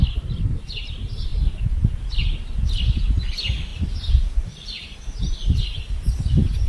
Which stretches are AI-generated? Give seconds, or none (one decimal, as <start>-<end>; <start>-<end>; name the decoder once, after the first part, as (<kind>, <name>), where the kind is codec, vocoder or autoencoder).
none

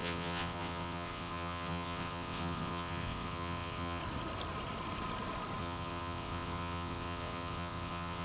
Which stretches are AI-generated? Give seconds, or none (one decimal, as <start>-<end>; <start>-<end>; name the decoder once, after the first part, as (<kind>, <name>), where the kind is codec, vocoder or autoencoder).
0.0-4.0 (vocoder, WaveNeXt); 5.6-8.2

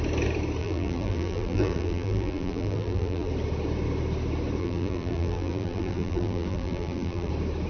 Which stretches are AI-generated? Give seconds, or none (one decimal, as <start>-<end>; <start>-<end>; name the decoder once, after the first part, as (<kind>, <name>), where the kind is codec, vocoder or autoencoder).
0.6-3.3 (vocoder, BigVGAN v2); 4.6-7.3

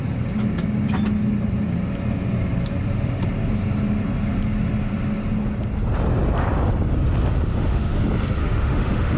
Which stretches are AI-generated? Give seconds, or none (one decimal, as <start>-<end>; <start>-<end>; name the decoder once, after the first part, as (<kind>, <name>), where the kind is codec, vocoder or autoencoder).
7.5-8.0 (autoencoder, DAC-VAE); 8.4-9.2

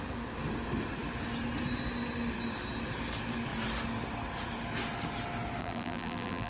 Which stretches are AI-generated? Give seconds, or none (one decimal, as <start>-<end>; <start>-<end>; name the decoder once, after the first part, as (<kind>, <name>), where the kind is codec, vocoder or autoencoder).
5.6-6.5 (vocoder, BigVGAN v2)

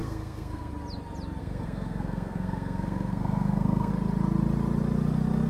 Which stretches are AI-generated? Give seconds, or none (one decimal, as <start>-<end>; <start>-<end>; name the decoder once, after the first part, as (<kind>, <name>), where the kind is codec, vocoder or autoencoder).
0.0-0.7 (codec, SNAC); 1.4-3.9

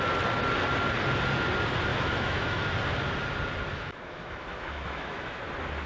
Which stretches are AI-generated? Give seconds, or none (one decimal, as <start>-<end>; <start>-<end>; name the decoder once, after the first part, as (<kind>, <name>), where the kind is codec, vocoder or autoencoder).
1.9-2.6 (autoencoder, DAC-VAE); 3.7-5.4

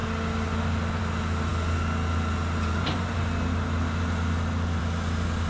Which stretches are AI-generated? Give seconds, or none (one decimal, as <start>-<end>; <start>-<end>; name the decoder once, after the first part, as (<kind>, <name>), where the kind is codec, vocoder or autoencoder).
none